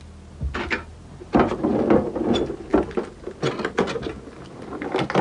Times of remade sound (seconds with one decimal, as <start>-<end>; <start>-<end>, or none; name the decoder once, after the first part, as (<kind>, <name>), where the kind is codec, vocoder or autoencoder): 0.9-1.7 (vocoder, BigVGAN v2); 2.7-3.3